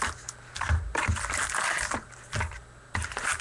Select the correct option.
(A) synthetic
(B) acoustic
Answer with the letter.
B